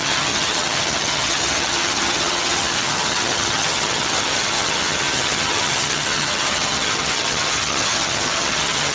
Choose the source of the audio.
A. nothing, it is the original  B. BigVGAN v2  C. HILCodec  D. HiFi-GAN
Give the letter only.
D